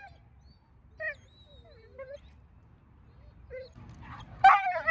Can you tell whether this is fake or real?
real